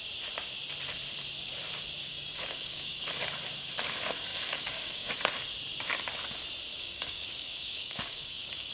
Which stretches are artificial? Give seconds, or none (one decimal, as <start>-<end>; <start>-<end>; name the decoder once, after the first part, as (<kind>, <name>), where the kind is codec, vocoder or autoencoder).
2.0-3.1 (codec, DAC); 4.3-5.1; 6.7-8.7